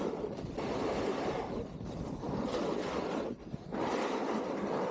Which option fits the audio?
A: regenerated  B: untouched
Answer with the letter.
B